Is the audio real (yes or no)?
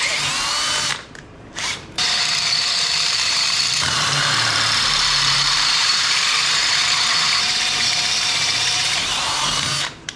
no